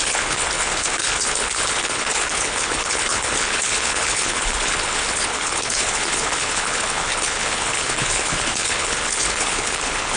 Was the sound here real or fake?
fake